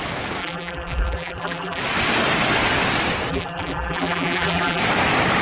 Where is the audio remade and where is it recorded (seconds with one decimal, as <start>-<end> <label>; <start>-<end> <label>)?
0.0-0.4 recorded; 0.4-1.8 remade; 1.8-3.3 recorded; 3.3-4.8 remade; 4.8-5.4 recorded